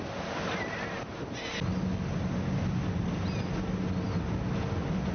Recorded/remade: recorded